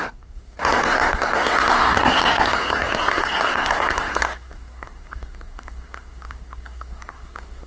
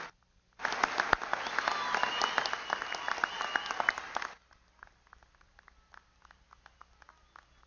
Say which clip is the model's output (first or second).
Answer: first